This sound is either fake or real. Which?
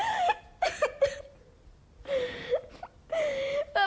real